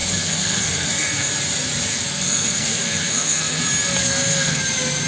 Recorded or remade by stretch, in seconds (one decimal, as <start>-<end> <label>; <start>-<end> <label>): 0.0-1.3 remade; 1.3-1.9 recorded; 1.9-3.6 remade; 3.6-4.0 recorded; 4.0-4.6 remade; 4.6-5.1 recorded